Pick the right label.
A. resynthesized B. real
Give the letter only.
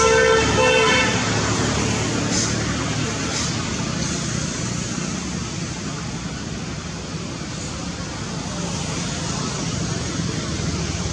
B